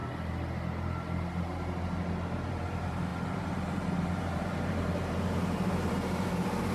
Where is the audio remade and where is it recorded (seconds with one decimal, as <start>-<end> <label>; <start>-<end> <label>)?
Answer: 0.0-2.5 recorded; 2.5-6.7 remade